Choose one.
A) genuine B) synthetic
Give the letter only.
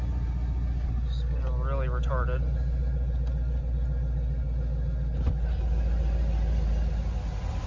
A